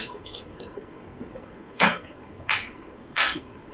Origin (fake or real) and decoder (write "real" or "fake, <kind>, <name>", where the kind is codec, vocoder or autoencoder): fake, codec, SNAC